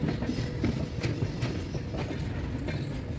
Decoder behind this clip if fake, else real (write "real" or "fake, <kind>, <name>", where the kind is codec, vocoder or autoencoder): real